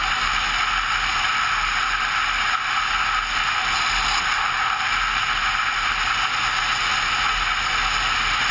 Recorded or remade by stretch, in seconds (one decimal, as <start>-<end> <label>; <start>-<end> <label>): 0.0-8.5 recorded

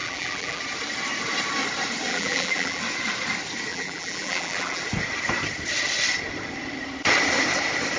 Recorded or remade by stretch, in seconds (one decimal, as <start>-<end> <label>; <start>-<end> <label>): 0.0-0.6 remade; 0.6-2.1 recorded; 2.1-2.8 remade; 2.8-3.7 recorded; 3.7-4.8 remade; 4.8-8.0 recorded

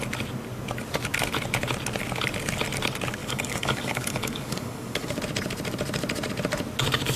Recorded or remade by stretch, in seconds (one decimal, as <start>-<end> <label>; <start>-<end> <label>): 0.0-3.2 recorded; 3.2-5.2 remade; 5.2-7.2 recorded

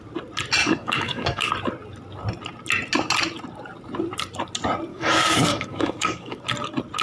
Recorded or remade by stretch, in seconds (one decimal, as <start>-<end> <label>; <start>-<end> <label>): 0.0-0.6 recorded; 0.6-1.5 remade; 1.5-4.9 recorded; 4.9-6.4 remade; 6.4-7.0 recorded

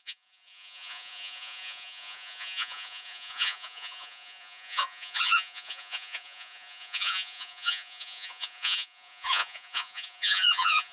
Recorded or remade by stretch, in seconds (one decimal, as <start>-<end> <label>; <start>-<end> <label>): 0.0-10.9 remade

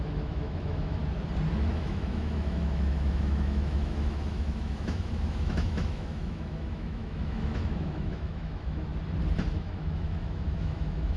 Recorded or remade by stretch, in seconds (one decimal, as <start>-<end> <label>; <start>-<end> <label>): 0.0-1.0 remade; 1.0-1.7 recorded; 1.7-8.9 remade; 8.9-9.5 recorded; 9.5-11.2 remade

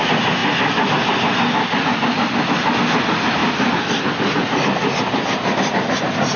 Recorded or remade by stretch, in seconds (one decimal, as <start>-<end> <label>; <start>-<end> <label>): 0.0-6.4 recorded

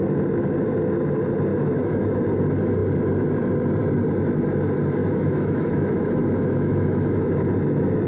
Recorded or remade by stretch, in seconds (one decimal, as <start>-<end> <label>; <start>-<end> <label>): 0.0-1.5 recorded; 1.5-2.1 remade; 2.1-5.0 recorded; 5.0-7.3 remade; 7.3-8.1 recorded